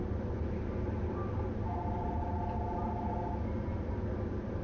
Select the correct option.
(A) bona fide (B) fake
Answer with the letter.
A